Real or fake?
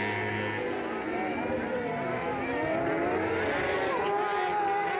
real